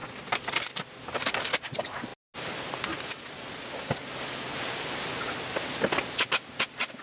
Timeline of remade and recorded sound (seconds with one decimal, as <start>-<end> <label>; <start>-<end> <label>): 0.0-7.0 recorded